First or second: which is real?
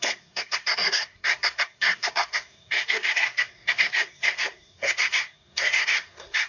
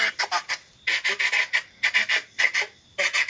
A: second